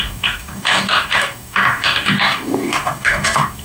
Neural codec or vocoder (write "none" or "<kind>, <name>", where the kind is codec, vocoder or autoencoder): codec, DAC